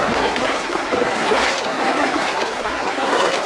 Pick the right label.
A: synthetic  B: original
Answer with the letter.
A